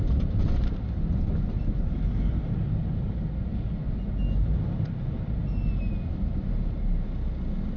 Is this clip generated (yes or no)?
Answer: no